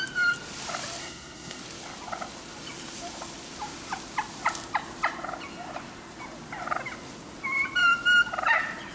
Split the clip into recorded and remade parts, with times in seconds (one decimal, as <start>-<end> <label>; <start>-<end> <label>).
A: 0.0-1.0 recorded; 1.0-1.6 remade; 1.6-8.9 recorded

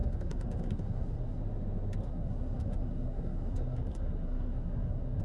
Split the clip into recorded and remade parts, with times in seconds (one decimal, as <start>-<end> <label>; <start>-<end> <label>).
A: 0.0-1.4 remade; 1.4-2.0 recorded; 2.0-5.2 remade

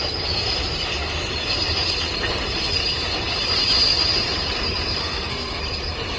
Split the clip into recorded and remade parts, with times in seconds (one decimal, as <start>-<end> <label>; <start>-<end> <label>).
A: 0.0-5.0 recorded; 5.0-5.6 remade; 5.6-6.2 recorded

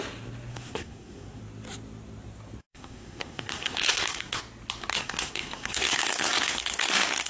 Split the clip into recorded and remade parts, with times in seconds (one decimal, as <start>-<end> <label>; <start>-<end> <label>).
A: 0.0-0.5 recorded; 0.5-1.4 remade; 1.4-2.6 recorded; 2.6-4.4 remade; 4.4-4.9 recorded; 4.9-7.3 remade